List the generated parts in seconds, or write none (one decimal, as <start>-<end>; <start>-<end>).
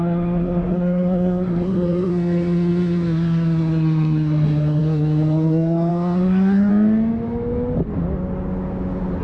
0.0-6.7